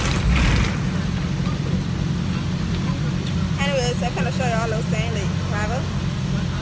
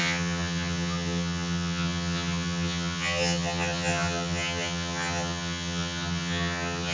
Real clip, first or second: first